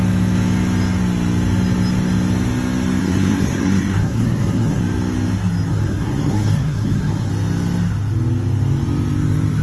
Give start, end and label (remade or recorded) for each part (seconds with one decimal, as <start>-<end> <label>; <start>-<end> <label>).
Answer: 0.0-3.0 recorded; 3.0-4.8 remade; 4.8-5.7 recorded; 5.7-7.3 remade; 7.3-9.6 recorded